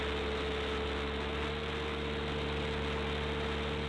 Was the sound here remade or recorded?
recorded